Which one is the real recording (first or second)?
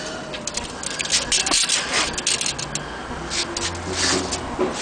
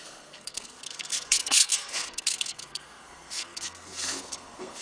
first